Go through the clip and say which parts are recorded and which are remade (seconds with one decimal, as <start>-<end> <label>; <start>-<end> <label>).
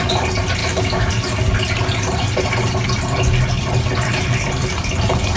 0.0-0.6 recorded; 0.6-1.1 remade; 1.1-5.4 recorded